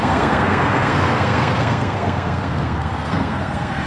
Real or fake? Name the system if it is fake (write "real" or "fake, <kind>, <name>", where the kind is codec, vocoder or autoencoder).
fake, codec, SNAC